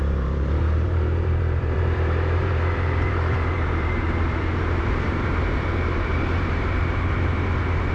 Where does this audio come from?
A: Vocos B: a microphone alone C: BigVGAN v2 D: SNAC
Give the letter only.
C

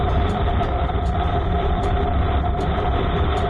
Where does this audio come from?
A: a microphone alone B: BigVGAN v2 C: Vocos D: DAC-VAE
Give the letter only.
B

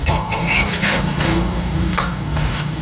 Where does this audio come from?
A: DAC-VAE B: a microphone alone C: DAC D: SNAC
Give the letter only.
C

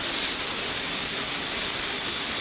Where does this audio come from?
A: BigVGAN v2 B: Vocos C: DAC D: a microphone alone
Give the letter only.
D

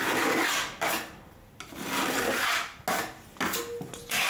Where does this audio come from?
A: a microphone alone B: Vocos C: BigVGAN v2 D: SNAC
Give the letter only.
A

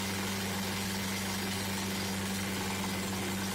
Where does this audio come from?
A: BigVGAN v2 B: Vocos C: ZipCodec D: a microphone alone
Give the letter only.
D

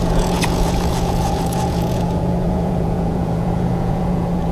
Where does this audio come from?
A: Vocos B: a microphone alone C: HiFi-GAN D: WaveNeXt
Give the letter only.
A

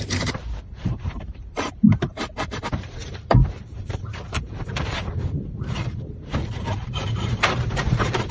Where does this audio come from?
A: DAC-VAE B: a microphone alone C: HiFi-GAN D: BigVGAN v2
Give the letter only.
D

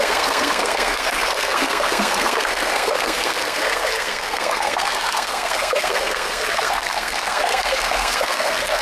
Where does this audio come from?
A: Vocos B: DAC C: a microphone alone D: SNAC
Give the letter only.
D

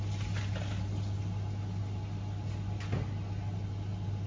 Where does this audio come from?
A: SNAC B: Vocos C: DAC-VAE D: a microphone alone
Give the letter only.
D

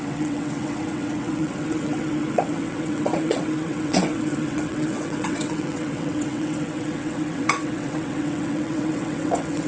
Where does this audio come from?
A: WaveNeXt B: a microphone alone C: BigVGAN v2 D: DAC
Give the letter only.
A